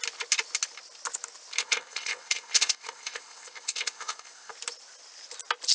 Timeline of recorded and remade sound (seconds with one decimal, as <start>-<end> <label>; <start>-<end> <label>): 0.0-1.6 recorded; 1.6-4.5 remade; 4.5-5.7 recorded